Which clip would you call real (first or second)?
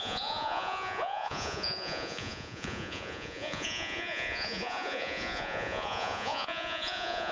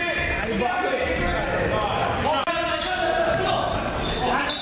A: second